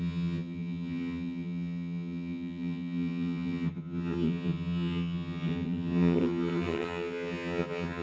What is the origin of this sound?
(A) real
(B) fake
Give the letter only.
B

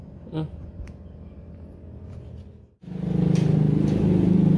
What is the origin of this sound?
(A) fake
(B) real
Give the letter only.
B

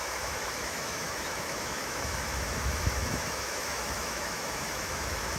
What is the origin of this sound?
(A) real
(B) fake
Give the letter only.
B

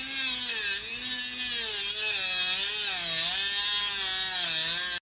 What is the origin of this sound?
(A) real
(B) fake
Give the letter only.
A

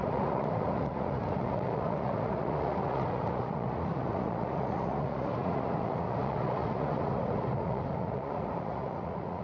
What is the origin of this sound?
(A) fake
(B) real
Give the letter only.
A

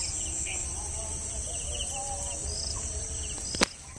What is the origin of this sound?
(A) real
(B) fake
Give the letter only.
A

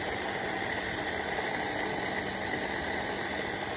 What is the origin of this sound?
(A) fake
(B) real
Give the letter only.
B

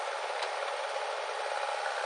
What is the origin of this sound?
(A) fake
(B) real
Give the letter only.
B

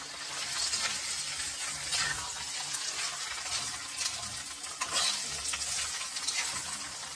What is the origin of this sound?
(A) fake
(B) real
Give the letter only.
B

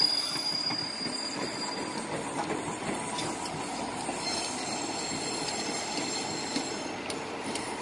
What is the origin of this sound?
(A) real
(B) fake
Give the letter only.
A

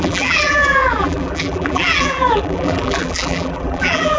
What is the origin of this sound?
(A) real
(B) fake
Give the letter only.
B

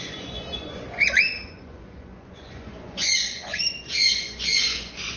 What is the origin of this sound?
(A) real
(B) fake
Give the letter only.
B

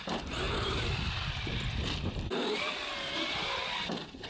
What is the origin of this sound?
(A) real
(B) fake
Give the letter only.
A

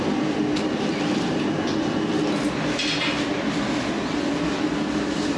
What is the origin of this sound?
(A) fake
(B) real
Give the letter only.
B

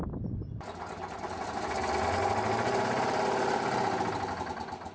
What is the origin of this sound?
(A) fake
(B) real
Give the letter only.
B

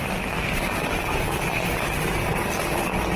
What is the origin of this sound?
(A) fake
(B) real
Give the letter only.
B